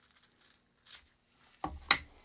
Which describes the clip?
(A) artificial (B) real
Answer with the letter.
B